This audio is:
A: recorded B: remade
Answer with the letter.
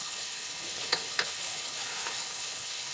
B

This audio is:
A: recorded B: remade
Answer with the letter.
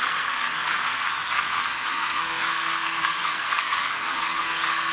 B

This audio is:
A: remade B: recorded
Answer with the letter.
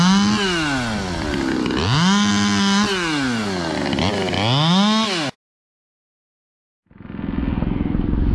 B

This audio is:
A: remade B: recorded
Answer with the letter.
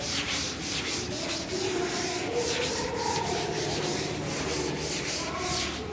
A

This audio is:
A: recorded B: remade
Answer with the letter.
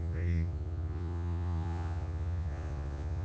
B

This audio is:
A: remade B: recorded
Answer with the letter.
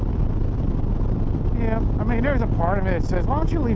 B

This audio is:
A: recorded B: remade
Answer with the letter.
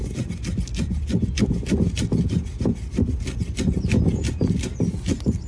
A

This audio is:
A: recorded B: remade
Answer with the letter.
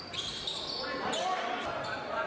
A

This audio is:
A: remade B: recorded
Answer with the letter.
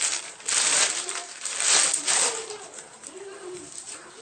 A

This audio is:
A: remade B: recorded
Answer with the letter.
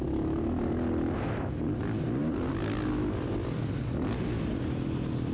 B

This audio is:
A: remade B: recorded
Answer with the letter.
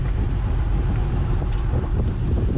A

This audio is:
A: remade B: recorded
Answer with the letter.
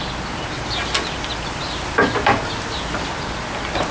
B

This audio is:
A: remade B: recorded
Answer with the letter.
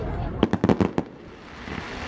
B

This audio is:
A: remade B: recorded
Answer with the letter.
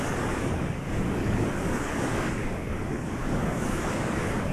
A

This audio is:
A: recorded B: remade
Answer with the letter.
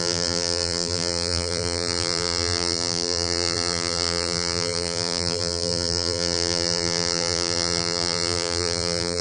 B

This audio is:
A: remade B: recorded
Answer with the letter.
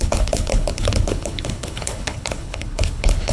A